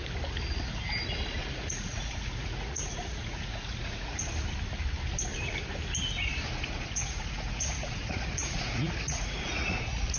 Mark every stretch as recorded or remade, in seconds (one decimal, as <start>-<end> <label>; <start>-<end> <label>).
0.0-1.4 recorded; 1.4-4.2 remade; 4.2-6.5 recorded; 6.5-10.2 remade